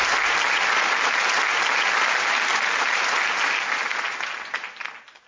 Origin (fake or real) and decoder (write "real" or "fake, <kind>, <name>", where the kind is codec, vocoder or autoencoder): real